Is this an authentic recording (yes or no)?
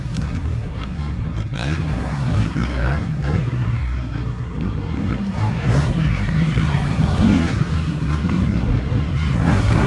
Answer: no